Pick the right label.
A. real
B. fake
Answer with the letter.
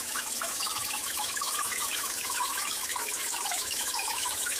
B